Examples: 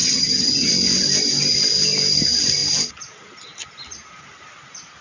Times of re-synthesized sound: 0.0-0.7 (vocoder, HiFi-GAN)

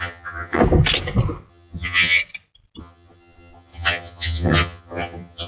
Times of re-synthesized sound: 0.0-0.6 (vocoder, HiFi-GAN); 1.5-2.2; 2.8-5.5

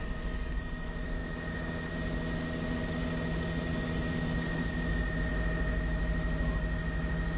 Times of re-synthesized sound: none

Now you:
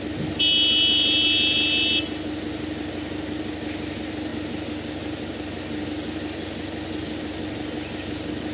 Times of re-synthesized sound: none

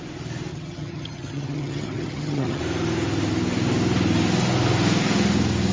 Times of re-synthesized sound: 0.5-2.6 (vocoder, HiFi-GAN)

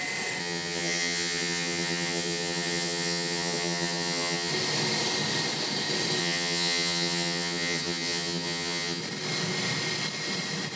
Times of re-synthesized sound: 0.4-4.5 (vocoder, HiFi-GAN); 6.2-9.0

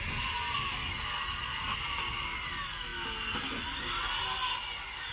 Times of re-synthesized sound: none

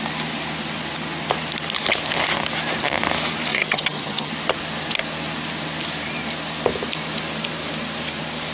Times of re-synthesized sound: 3.5-4.3 (vocoder, HiFi-GAN)